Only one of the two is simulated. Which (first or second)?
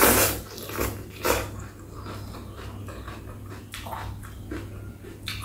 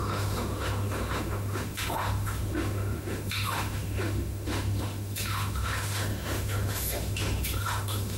second